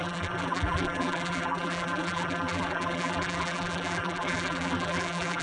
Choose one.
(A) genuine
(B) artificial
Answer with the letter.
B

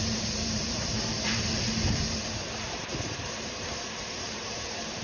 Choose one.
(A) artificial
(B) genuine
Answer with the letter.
A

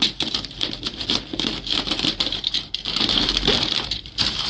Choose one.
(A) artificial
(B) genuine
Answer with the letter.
A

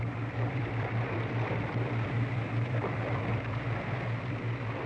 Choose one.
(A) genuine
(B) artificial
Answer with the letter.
B